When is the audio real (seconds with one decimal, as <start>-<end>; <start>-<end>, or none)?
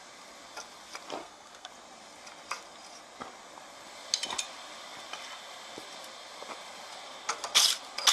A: 0.0-1.2; 1.7-8.1